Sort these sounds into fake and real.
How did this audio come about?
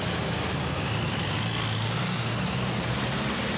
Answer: real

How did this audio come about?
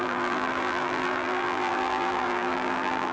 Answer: fake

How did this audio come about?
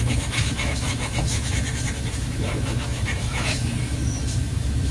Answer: fake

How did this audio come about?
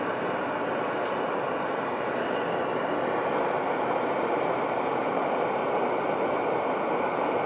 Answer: real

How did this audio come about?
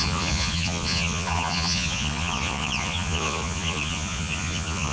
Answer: fake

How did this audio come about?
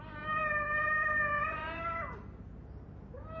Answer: real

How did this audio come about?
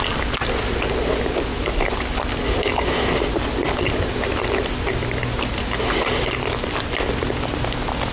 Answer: real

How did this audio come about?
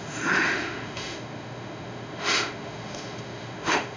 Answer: fake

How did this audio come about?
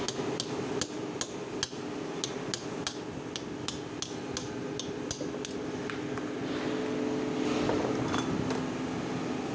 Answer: real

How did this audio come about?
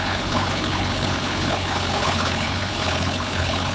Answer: fake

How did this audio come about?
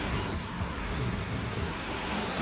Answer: fake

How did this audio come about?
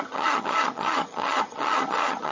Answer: fake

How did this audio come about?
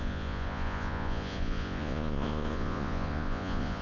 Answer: fake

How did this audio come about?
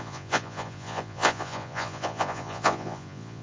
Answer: fake